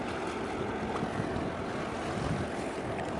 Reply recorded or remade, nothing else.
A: recorded